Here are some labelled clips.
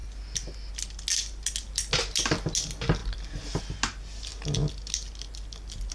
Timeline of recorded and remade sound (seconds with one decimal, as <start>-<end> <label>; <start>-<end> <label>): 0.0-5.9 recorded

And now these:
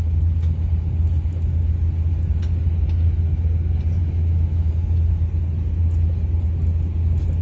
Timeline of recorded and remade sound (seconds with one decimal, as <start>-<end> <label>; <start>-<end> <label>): 0.0-4.0 recorded; 4.0-4.7 remade; 4.7-7.4 recorded

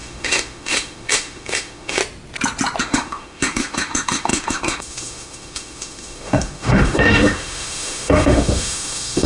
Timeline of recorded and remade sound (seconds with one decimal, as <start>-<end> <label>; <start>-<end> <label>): 0.0-2.0 remade; 2.0-2.8 recorded; 2.8-9.3 remade